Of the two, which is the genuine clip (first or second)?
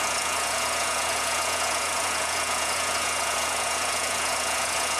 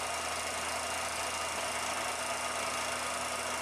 second